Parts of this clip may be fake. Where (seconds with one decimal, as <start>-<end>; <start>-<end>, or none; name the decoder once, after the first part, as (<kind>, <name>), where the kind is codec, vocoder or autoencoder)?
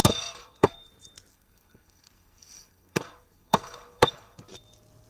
0.0-0.9 (codec, SNAC); 1.3-4.4